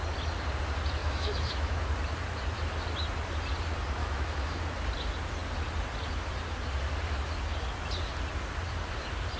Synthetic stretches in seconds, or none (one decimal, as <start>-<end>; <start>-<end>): 1.0-1.9; 4.0-4.6